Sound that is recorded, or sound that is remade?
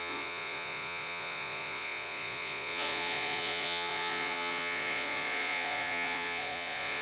remade